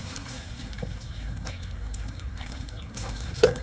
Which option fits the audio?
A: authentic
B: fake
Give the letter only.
B